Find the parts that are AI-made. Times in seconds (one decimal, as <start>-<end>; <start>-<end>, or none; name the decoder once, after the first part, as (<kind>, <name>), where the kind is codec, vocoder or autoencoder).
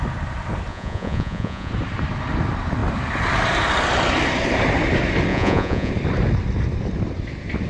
0.7-1.7 (vocoder, Vocos); 5.3-5.9